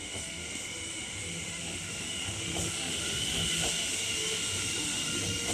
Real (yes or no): no